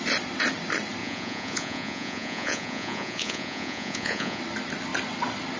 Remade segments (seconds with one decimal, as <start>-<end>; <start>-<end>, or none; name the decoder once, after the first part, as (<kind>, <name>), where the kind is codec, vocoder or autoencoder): 1.0-4.4 (vocoder, Vocos)